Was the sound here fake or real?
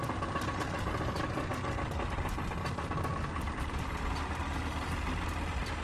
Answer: real